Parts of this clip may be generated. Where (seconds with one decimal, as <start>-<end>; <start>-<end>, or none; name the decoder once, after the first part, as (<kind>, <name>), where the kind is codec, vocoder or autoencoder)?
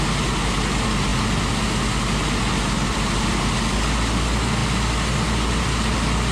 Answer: none